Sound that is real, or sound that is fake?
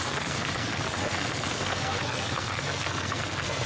fake